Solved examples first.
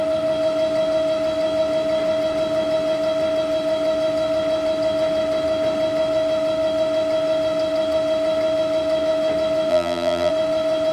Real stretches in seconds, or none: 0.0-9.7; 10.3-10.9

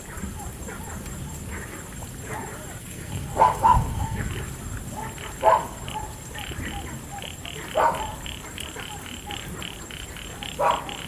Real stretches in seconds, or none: 0.0-2.8; 4.3-11.1

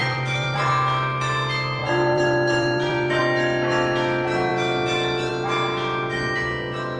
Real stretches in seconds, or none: 0.7-1.8; 3.2-7.0